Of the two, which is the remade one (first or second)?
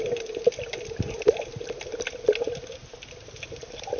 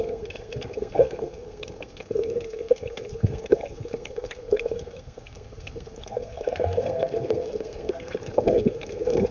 second